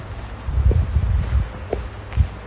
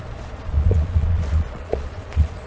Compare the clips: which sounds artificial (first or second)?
second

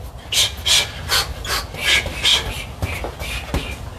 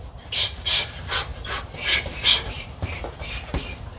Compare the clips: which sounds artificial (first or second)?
second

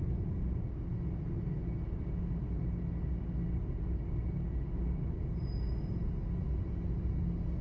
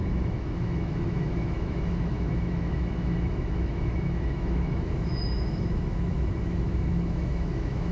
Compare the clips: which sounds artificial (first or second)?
second